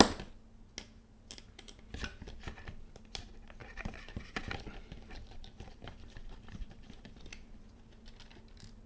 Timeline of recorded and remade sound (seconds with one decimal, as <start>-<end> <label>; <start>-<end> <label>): 0.0-3.6 recorded; 3.6-7.1 remade; 7.1-8.9 recorded